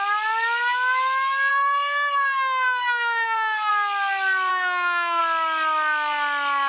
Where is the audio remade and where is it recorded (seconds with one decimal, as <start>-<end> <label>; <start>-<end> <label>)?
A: 0.0-1.5 recorded; 1.5-3.7 remade; 3.7-4.5 recorded; 4.5-5.2 remade; 5.2-6.7 recorded